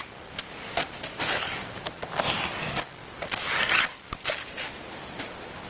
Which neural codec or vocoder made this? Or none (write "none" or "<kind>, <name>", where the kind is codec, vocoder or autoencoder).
none